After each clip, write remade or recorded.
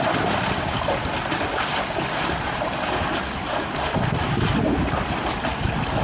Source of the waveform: recorded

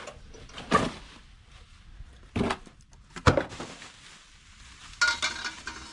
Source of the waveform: recorded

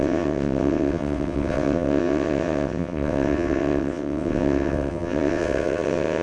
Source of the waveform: remade